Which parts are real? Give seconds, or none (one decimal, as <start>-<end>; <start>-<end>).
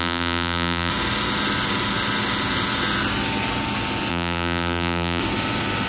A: 0.9-4.1; 5.2-5.9